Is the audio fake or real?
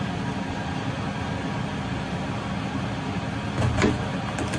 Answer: real